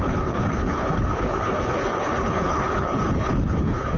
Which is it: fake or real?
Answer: fake